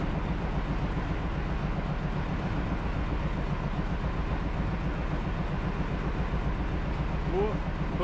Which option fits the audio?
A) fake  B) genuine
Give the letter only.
B